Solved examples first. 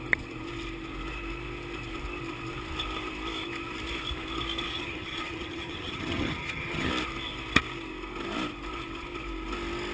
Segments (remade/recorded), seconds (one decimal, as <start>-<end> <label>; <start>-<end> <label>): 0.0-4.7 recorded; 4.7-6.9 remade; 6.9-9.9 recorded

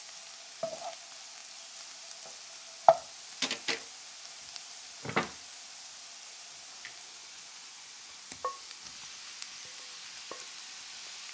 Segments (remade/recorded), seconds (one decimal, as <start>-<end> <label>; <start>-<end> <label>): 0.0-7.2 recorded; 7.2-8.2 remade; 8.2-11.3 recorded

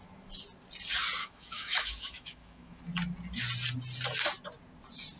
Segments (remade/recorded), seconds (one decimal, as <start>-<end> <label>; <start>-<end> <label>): 0.0-1.2 recorded; 1.2-2.8 remade; 2.8-5.2 recorded

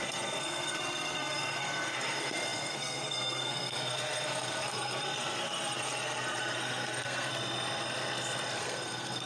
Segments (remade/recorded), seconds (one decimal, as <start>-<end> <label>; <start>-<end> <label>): 0.0-7.3 remade; 7.3-8.6 recorded; 8.6-9.3 remade

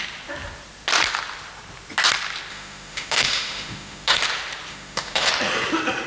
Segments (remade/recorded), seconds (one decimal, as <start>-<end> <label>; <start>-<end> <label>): 0.0-2.5 recorded; 2.5-4.2 remade; 4.2-4.7 recorded; 4.7-5.3 remade; 5.3-6.1 recorded